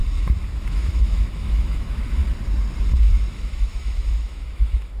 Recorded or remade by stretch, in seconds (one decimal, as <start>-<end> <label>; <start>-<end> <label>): 0.0-0.5 recorded; 0.5-2.2 remade; 2.2-3.3 recorded; 3.3-5.0 remade